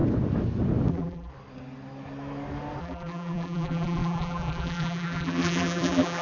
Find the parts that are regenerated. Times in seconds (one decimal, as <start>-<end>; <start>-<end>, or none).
0.9-1.3; 2.8-6.2